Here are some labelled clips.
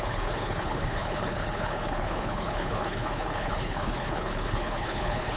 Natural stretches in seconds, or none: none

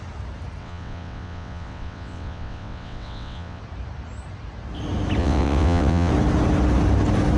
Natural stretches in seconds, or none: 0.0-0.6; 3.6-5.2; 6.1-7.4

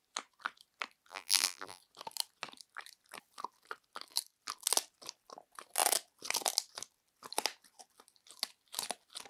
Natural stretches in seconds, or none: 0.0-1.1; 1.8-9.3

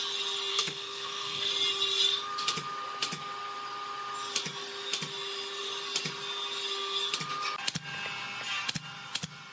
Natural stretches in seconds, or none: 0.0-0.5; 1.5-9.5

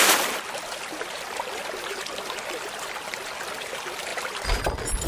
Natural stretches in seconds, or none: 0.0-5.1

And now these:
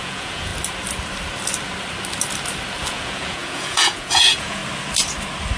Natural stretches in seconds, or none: 0.5-2.9; 4.6-5.6

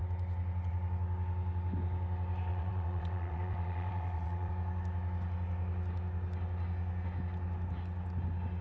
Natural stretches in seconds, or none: 0.0-2.5; 4.5-8.6